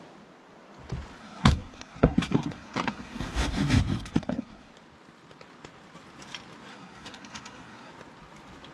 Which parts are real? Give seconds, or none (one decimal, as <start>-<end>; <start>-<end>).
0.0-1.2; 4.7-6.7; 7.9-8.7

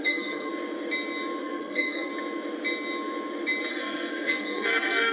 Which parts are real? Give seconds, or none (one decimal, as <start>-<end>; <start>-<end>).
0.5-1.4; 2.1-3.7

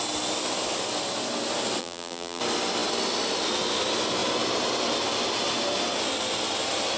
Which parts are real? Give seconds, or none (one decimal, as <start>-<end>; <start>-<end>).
0.0-1.8; 2.4-7.0

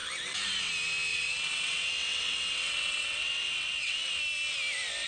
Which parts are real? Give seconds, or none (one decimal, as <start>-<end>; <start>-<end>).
0.0-1.1; 4.2-5.1